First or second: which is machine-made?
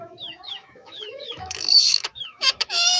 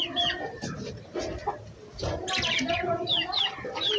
first